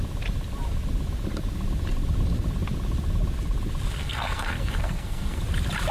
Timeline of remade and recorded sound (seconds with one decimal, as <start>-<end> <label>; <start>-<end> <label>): 0.0-4.0 recorded; 4.0-5.4 remade; 5.4-5.9 recorded